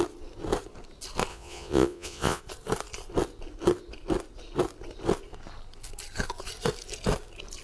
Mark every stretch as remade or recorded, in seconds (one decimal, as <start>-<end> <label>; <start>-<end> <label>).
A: 0.0-1.3 recorded; 1.3-2.4 remade; 2.4-7.6 recorded